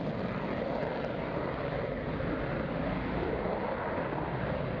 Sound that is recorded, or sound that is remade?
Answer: recorded